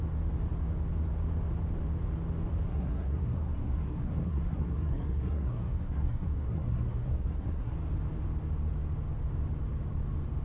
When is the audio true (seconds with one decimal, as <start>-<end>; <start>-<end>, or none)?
0.0-2.7; 7.7-10.4